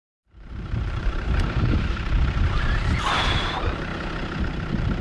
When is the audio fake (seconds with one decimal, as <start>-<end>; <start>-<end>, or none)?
0.0-3.9; 4.4-5.0